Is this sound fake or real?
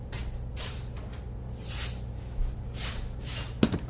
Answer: real